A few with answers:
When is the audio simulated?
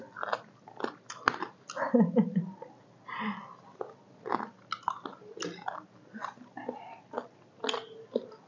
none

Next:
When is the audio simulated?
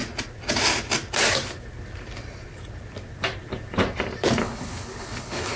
4.4-5.6 (codec, HILCodec)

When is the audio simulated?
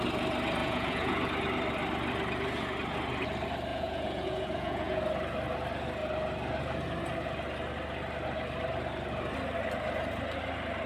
0.6-1.2 (vocoder, Vocos); 3.7-5.0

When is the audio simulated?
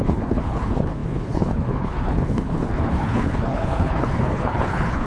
0.0-5.1 (codec, HILCodec)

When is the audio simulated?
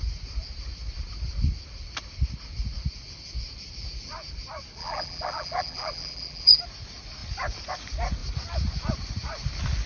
4.8-6.6 (vocoder, BigVGAN v2)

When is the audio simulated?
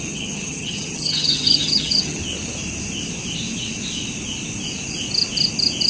0.0-2.2 (vocoder, HiFi-GAN)